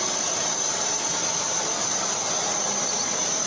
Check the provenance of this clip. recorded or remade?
recorded